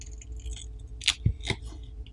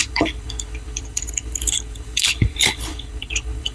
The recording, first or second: first